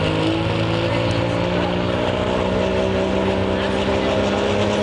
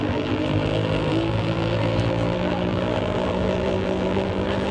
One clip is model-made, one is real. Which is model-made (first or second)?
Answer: second